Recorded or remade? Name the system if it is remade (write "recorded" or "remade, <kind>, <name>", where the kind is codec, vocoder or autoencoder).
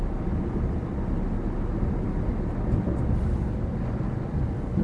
recorded